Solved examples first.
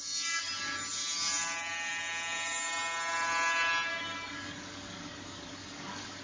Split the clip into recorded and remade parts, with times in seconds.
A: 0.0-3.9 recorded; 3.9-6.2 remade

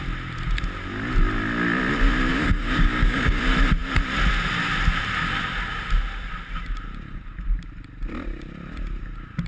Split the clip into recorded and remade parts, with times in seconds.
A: 0.0-2.3 recorded; 2.3-3.4 remade; 3.4-9.5 recorded

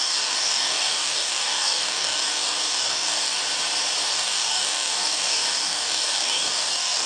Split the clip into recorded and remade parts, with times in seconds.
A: 0.0-3.4 remade; 3.4-4.1 recorded; 4.1-7.1 remade

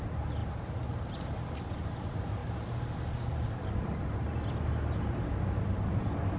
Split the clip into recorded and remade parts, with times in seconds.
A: 0.0-6.4 recorded

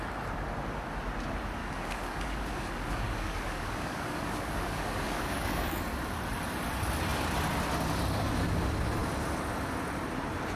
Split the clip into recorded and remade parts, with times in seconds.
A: 0.0-1.6 recorded; 1.6-5.8 remade; 5.8-10.6 recorded

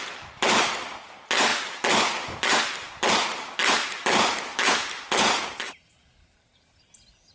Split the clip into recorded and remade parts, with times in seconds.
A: 0.0-7.3 recorded

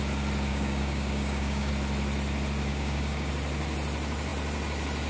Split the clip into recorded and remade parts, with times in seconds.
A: 0.0-0.5 recorded; 0.5-1.7 remade; 1.7-2.7 recorded; 2.7-3.3 remade; 3.3-5.1 recorded